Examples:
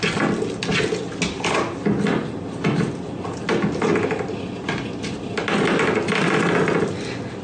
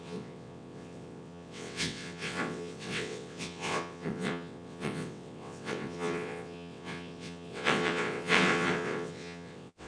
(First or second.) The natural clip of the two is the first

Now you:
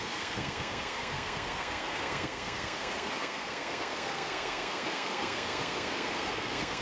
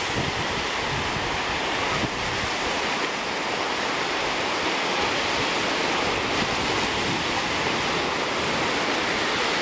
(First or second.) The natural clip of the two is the second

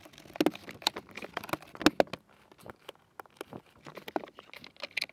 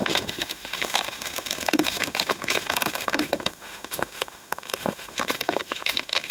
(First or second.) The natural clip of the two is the first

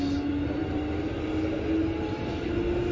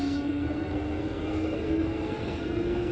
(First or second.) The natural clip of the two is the first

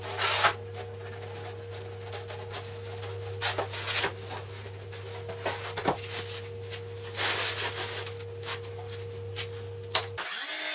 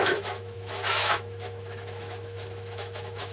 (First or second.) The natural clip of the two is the first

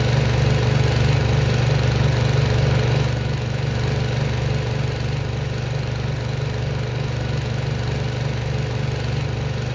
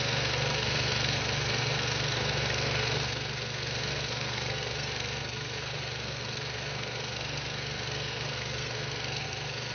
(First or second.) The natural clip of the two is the first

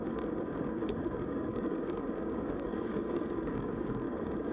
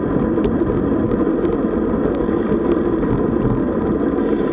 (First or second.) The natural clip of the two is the second